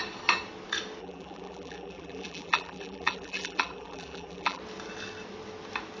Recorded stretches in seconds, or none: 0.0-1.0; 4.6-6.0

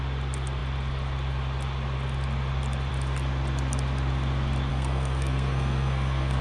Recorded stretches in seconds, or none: 0.0-4.7